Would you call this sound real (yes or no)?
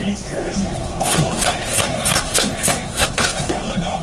no